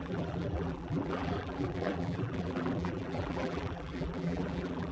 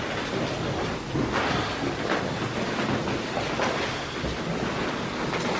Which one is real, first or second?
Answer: second